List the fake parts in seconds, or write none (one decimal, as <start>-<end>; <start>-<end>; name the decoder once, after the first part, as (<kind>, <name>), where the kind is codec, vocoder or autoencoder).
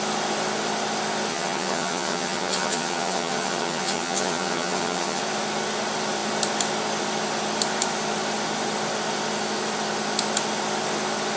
1.3-5.2 (vocoder, HiFi-GAN)